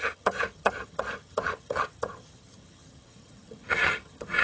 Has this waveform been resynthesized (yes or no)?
yes